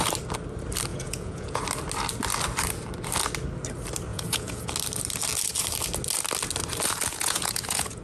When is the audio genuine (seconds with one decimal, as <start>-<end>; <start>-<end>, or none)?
0.0-0.9; 1.6-4.1; 4.7-7.1